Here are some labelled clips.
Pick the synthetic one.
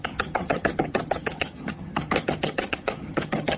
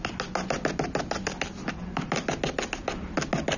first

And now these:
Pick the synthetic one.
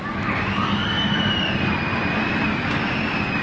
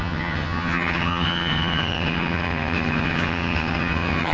second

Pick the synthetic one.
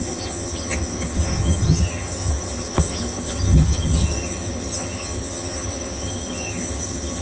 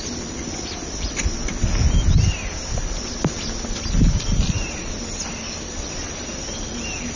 first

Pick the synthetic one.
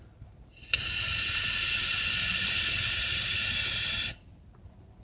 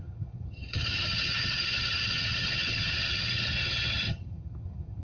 second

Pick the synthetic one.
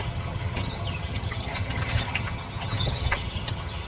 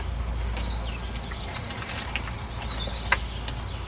first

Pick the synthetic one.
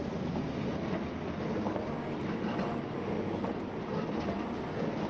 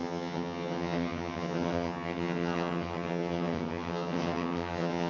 second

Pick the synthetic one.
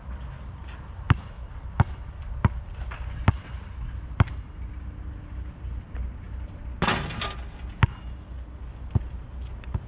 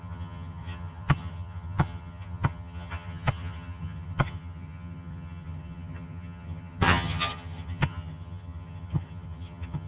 second